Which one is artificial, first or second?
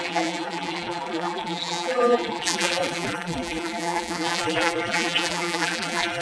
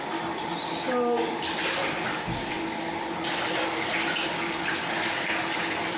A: first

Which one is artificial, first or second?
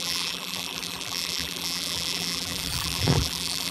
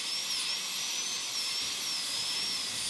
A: first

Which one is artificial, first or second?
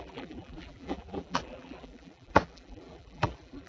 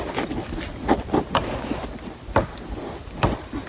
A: first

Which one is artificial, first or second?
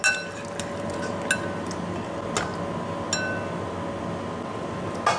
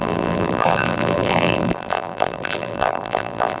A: second